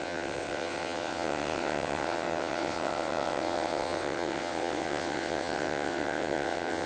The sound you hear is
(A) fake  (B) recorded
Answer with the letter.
A